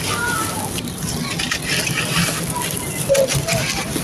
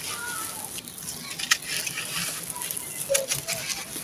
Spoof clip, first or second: first